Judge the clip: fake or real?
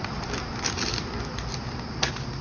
fake